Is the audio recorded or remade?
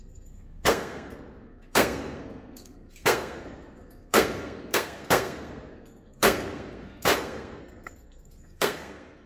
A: remade